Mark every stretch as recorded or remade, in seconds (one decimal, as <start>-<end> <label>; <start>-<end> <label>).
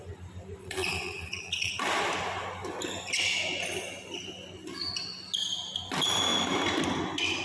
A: 0.0-0.6 recorded; 0.6-1.7 remade; 1.7-7.4 recorded